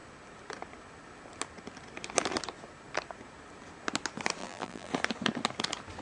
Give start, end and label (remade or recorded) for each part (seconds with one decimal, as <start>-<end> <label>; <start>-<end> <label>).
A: 0.0-4.4 recorded; 4.4-4.9 remade; 4.9-6.0 recorded